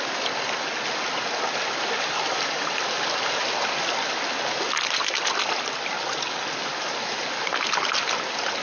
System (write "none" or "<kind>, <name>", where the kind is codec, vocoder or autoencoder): none